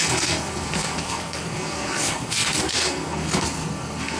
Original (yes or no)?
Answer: no